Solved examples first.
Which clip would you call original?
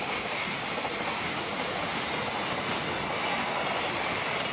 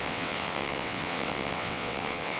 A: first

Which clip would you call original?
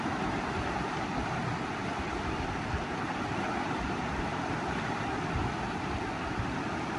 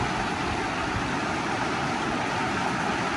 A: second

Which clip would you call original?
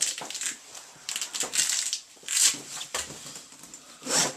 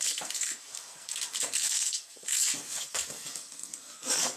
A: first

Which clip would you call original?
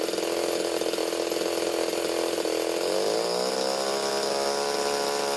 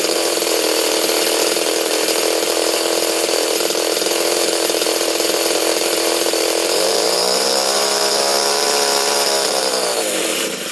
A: first